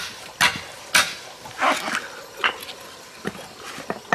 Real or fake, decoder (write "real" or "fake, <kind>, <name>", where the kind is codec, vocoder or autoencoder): real